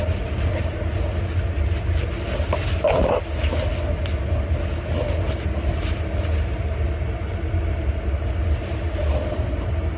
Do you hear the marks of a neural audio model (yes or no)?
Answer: no